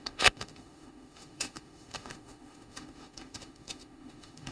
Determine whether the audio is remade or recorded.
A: remade